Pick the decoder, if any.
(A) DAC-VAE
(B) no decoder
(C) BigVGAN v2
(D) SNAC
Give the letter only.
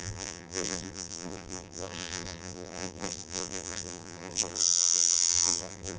C